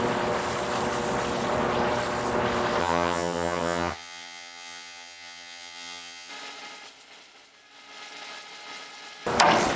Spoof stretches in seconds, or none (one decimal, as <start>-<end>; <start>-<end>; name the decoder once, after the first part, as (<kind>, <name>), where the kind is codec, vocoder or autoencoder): 2.8-6.3 (vocoder, HiFi-GAN)